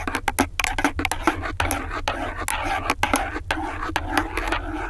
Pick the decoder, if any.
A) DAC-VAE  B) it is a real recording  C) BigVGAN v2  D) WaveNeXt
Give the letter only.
B